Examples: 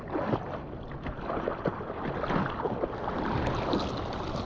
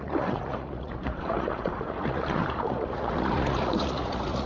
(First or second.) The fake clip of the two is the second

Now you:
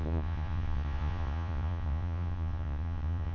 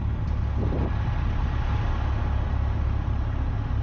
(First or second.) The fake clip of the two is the first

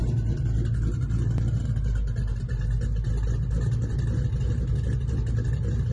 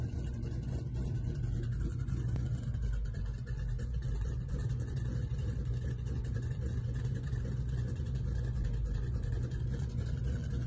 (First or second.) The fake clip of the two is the second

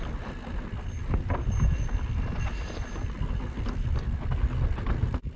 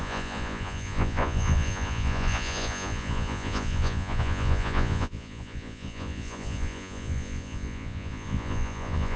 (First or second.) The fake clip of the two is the second